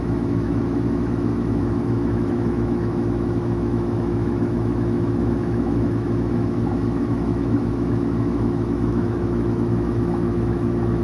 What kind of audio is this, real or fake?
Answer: fake